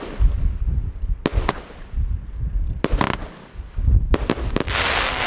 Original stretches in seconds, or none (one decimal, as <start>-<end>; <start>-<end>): 0.0-5.3